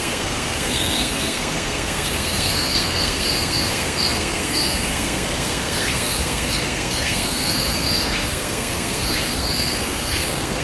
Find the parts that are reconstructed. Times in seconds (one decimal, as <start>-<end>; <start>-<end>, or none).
0.0-10.6